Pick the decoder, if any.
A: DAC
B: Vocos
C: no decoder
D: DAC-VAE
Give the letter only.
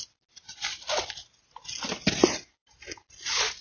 C